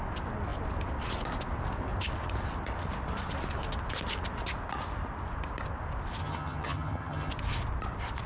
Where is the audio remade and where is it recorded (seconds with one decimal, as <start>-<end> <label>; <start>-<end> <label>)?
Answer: 0.0-6.2 recorded; 6.2-7.3 remade; 7.3-8.3 recorded